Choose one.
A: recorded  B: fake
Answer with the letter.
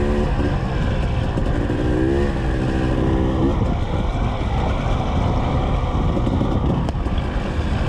A